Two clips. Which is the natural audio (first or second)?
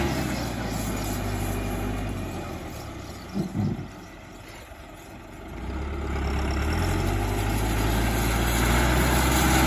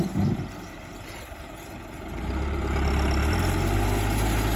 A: first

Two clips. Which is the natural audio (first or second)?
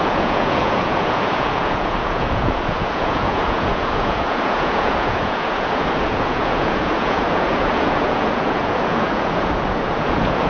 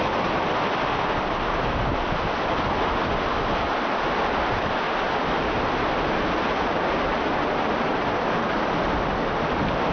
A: second